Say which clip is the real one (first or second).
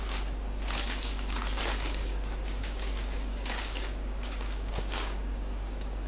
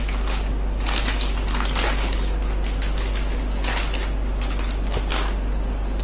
second